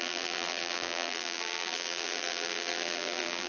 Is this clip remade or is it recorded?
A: remade